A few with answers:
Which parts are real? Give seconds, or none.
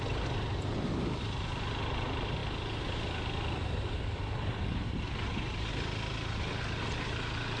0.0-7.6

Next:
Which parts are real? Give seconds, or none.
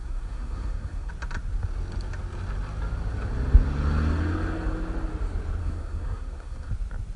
1.1-5.6; 6.7-7.2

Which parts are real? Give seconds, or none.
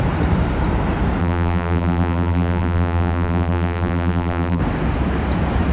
0.0-1.2; 4.6-5.7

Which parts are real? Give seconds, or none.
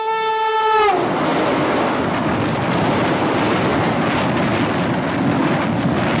0.0-6.2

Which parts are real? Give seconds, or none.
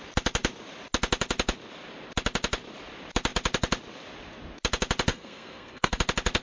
0.0-5.1; 6.0-6.4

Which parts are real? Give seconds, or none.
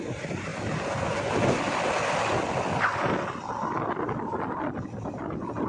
0.0-5.7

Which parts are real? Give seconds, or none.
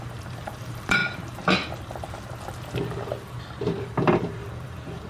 1.0-3.8